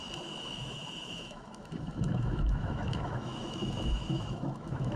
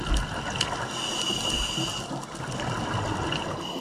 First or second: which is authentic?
second